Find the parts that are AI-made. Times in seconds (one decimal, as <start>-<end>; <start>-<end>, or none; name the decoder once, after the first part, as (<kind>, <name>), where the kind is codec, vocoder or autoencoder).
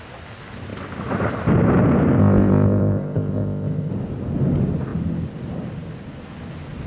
2.2-3.9 (codec, ZipCodec)